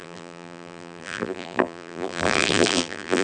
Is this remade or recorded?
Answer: remade